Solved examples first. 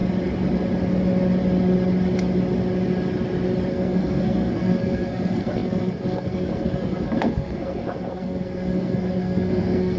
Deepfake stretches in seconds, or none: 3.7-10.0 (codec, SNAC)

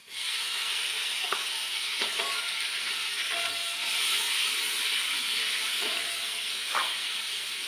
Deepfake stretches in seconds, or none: 0.0-7.7 (codec, SNAC)

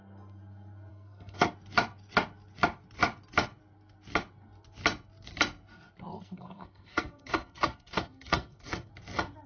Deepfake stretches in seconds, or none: 0.9-1.5 (codec, SNAC); 6.1-8.9

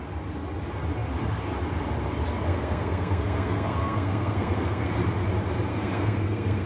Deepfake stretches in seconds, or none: 2.5-4.9 (codec, SNAC); 5.7-6.7

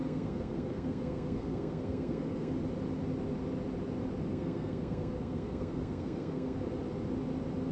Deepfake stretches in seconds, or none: 0.0-2.5 (codec, SNAC); 4.3-6.6